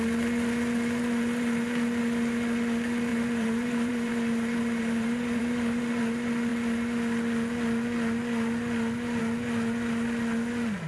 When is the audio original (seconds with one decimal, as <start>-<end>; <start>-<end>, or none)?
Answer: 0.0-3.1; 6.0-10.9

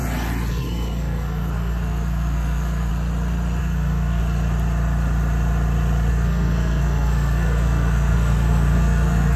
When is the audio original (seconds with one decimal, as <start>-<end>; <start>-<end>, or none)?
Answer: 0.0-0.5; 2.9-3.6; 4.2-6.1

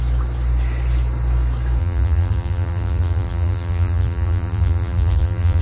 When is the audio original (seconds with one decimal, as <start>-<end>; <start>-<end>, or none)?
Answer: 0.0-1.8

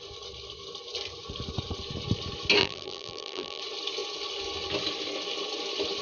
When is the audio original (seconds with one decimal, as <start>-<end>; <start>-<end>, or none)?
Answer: 0.0-2.6; 3.6-6.0

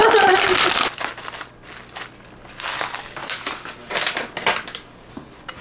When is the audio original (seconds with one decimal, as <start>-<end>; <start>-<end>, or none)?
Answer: 0.0-5.6

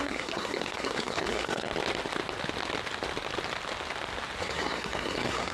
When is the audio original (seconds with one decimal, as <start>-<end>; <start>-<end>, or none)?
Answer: 1.7-4.4